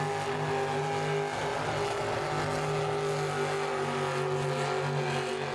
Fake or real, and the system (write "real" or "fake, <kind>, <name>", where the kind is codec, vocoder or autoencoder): real